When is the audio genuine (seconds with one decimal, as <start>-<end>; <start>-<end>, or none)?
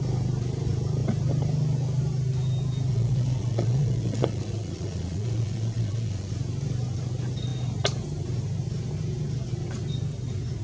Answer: 0.0-2.9; 6.3-10.6